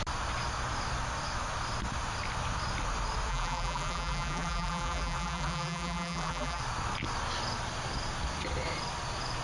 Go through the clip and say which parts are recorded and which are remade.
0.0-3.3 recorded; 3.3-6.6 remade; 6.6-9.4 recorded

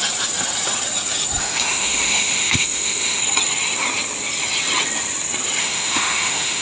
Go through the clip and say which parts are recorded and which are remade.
0.0-1.4 recorded; 1.4-3.2 remade; 3.2-5.6 recorded; 5.6-6.6 remade

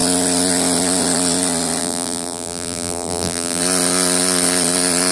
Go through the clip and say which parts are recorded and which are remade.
0.0-1.8 recorded; 1.8-3.6 remade; 3.6-5.1 recorded

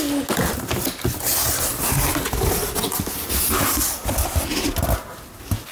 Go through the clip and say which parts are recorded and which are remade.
0.0-5.7 recorded

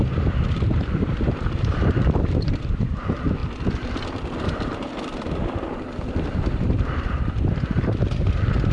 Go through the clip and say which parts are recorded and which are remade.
0.0-3.4 remade; 3.4-4.5 recorded; 4.5-8.7 remade

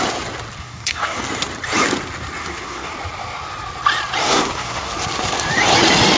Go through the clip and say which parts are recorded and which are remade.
0.0-0.6 recorded; 0.6-1.2 remade; 1.2-2.4 recorded; 2.4-2.9 remade; 2.9-4.2 recorded; 4.2-4.9 remade; 4.9-6.2 recorded

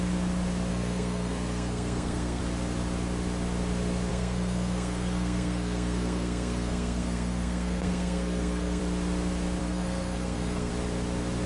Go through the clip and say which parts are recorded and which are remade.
0.0-0.7 recorded; 0.7-2.4 remade; 2.4-4.1 recorded; 4.1-8.8 remade; 8.8-9.6 recorded; 9.6-10.7 remade; 10.7-11.5 recorded